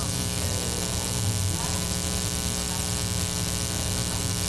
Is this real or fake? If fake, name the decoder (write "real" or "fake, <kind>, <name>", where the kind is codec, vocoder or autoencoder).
real